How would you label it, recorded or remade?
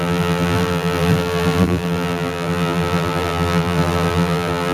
remade